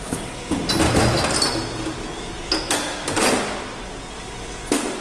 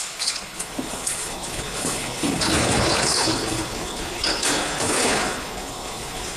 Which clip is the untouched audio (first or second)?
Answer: first